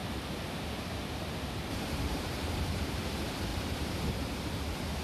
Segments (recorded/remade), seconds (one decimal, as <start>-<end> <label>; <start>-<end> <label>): 0.0-3.0 remade; 3.0-3.5 recorded; 3.5-4.1 remade; 4.1-5.0 recorded